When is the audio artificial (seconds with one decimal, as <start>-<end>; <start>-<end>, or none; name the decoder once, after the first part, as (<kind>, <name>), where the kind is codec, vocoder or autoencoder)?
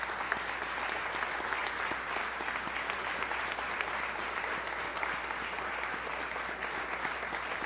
1.6-2.2 (vocoder, BigVGAN v2); 4.9-5.7